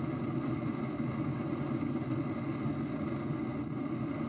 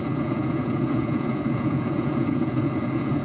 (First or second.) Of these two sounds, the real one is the first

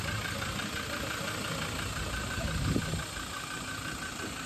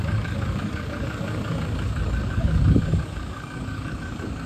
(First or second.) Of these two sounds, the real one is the first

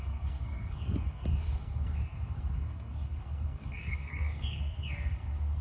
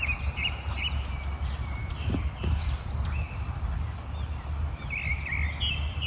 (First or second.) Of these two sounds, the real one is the second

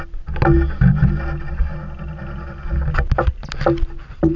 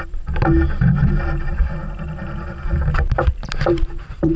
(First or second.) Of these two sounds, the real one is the first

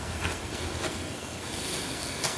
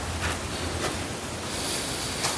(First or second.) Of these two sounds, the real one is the second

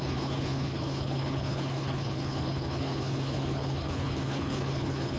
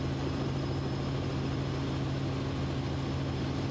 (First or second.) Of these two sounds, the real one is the second